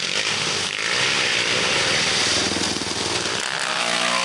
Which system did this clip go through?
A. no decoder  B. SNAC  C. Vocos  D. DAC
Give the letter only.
A